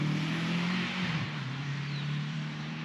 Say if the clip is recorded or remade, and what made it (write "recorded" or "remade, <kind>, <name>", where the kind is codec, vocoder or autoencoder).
remade, vocoder, BigVGAN v2